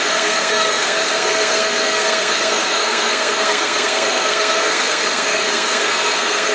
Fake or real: fake